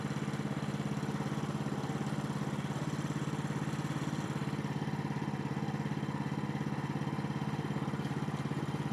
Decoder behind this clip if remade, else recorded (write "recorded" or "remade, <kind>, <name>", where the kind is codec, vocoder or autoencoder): recorded